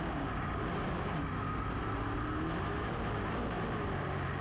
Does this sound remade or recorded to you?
recorded